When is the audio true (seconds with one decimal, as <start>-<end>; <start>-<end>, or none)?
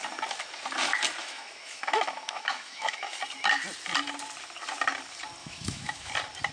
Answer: 0.0-1.2; 3.2-5.4; 6.1-6.5